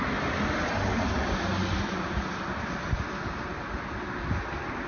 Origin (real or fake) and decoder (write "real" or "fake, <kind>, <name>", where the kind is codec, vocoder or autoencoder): real